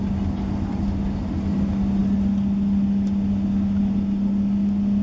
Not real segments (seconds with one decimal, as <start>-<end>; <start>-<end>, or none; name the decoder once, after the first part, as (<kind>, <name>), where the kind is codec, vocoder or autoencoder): none

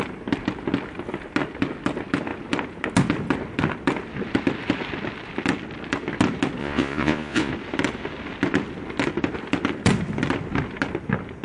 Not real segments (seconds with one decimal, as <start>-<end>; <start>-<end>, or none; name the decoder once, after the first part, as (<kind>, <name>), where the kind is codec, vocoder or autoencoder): 6.6-7.5 (vocoder, Vocos)